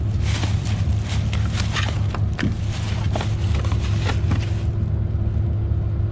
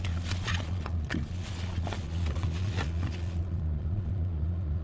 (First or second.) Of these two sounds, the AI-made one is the second